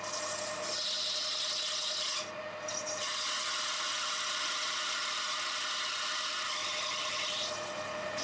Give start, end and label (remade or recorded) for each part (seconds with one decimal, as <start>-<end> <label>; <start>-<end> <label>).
0.0-5.0 recorded; 5.0-7.7 remade; 7.7-8.2 recorded